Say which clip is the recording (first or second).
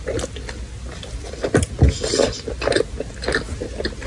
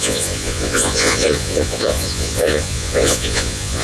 first